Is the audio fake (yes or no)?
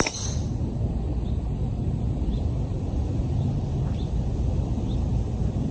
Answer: no